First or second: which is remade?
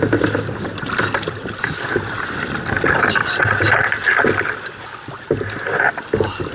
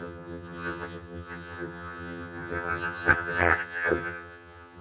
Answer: second